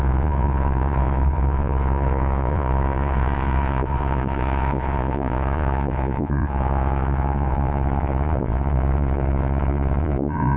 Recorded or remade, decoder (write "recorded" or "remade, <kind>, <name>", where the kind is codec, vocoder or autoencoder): remade, vocoder, Vocos